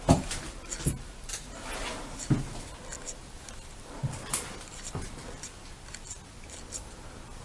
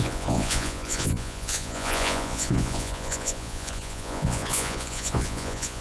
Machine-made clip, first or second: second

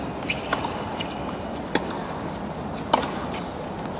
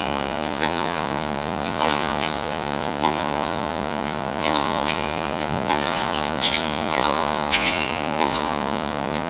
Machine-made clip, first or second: second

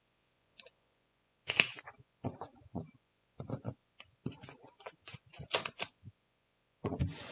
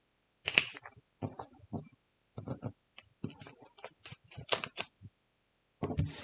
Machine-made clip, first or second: first